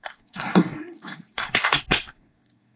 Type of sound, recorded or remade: remade